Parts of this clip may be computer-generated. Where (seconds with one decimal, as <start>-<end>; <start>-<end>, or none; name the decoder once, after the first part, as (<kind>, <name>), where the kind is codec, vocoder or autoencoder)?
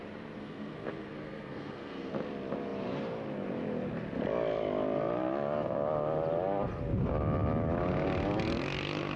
0.4-2.1 (codec, SNAC)